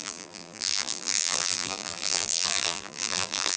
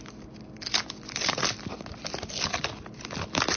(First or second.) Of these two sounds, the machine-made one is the first